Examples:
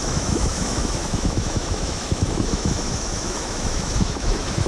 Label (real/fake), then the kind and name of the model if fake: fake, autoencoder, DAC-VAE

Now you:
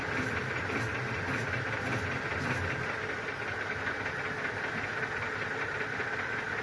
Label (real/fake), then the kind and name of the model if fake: real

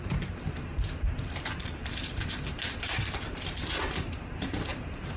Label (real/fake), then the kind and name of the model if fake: fake, vocoder, BigVGAN v2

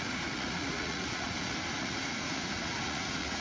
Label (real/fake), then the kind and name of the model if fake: fake, vocoder, Vocos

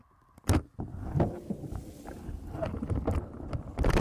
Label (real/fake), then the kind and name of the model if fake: real